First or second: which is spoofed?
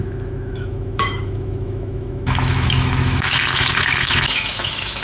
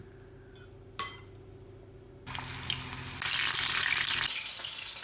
first